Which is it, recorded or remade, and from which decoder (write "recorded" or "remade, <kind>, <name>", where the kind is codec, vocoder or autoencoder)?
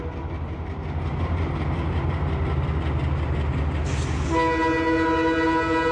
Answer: recorded